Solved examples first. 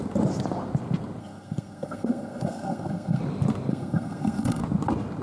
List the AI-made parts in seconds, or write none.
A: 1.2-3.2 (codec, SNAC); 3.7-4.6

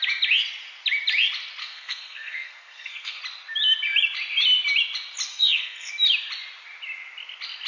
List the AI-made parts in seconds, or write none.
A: 1.6-3.2 (codec, SNAC); 5.3-5.9